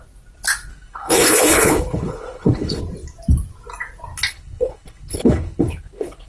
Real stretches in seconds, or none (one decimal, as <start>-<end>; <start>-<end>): 0.0-0.7; 2.8-4.3